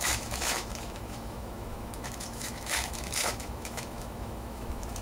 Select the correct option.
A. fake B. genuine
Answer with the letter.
A